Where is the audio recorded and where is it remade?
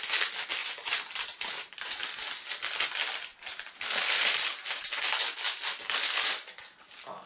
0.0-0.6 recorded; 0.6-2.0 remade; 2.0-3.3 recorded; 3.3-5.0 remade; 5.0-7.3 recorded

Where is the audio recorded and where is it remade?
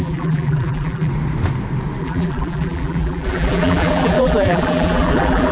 0.0-1.1 remade; 1.1-2.0 recorded; 2.0-5.5 remade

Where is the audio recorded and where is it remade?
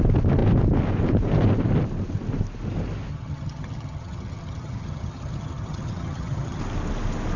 0.0-3.1 recorded; 3.1-6.6 remade; 6.6-7.4 recorded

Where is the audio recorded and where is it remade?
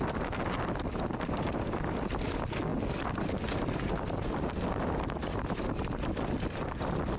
0.0-7.2 recorded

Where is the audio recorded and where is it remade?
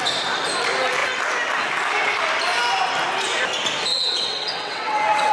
0.0-3.9 recorded; 3.9-5.3 remade